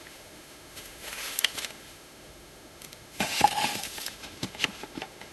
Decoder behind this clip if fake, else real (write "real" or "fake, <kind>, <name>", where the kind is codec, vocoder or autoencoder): fake, autoencoder, DAC-VAE